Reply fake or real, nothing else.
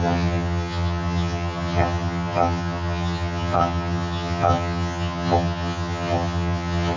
fake